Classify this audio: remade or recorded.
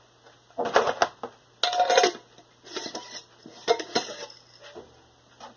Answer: recorded